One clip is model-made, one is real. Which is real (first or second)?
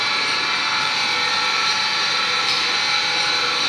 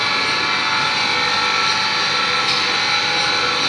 second